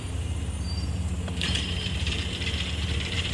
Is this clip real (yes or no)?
no